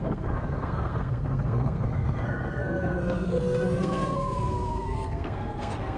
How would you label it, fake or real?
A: fake